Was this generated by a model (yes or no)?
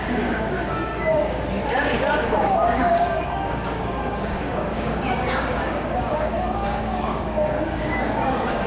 yes